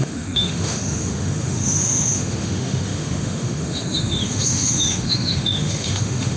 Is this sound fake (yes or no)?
yes